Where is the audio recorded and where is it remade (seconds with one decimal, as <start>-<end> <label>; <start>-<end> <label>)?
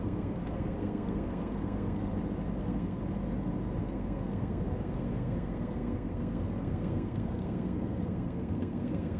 0.0-2.0 remade; 2.0-2.6 recorded; 2.6-3.0 remade; 3.0-3.8 recorded; 3.8-9.2 remade